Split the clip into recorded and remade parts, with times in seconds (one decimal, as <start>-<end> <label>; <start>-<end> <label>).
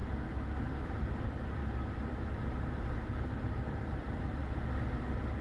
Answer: 0.0-1.6 remade; 1.6-3.4 recorded; 3.4-5.4 remade